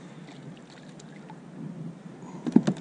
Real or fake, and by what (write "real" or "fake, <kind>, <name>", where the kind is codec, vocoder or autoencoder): real